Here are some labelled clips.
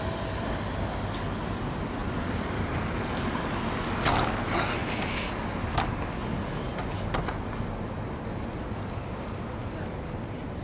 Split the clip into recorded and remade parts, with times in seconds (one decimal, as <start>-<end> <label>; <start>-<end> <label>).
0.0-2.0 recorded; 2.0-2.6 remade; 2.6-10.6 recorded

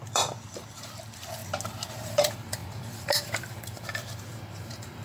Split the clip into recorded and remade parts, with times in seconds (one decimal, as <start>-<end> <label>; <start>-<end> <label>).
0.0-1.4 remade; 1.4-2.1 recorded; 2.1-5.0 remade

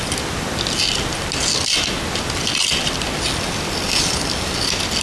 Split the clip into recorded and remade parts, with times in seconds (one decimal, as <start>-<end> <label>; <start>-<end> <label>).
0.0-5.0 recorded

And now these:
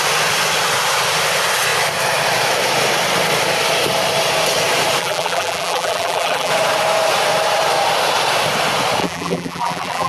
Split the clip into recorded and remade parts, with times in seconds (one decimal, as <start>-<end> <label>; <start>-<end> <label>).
0.0-5.0 recorded; 5.0-6.5 remade; 6.5-9.0 recorded; 9.0-10.1 remade

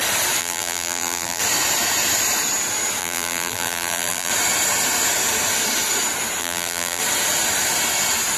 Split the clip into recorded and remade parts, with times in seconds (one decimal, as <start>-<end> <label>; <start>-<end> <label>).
0.0-0.4 recorded; 0.4-1.4 remade; 1.4-3.0 recorded; 3.0-4.3 remade; 4.3-6.4 recorded; 6.4-7.0 remade; 7.0-8.4 recorded

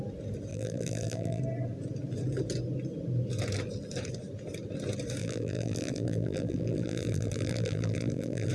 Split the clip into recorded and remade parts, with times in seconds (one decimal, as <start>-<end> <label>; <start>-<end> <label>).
0.0-0.5 recorded; 0.5-1.4 remade; 1.4-5.2 recorded; 5.2-8.5 remade

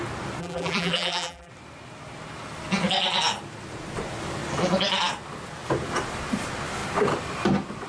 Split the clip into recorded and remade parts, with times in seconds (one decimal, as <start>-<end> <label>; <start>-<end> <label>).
0.0-0.4 recorded; 0.4-1.5 remade; 1.5-7.9 recorded